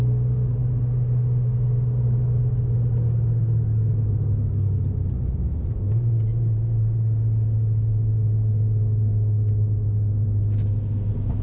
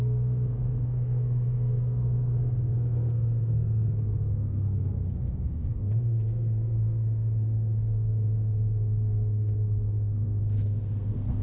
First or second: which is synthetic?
second